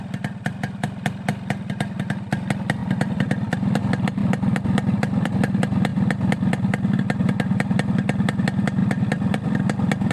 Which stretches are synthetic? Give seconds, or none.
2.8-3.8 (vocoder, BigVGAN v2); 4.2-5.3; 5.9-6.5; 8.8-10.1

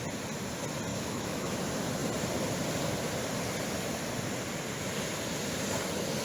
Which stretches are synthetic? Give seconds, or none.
0.9-1.6 (autoencoder, DAC-VAE)